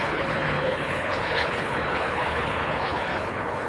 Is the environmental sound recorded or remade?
remade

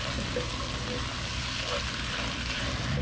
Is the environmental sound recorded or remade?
recorded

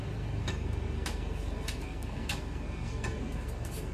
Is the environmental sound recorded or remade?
remade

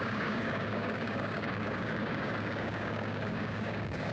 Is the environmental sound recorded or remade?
remade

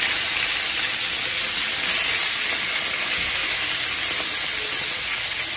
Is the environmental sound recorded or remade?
recorded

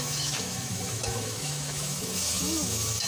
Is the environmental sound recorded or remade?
remade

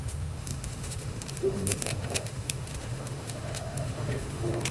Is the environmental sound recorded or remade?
remade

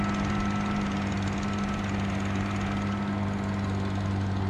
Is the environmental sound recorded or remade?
recorded